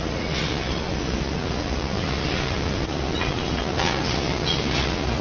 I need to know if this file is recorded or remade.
remade